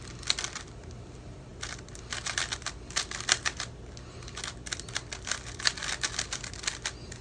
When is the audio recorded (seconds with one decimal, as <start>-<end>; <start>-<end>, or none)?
0.0-7.2